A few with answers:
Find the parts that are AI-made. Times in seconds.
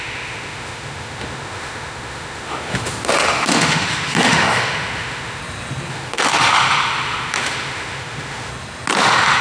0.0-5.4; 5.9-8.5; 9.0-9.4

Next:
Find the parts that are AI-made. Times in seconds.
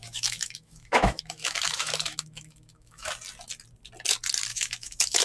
0.0-3.1; 4.5-5.2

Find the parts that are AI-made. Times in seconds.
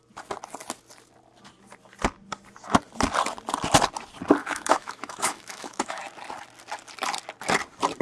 4.4-6.0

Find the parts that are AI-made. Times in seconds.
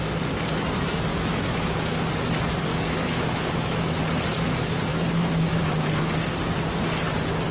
1.1-1.8; 2.7-4.0; 4.9-5.6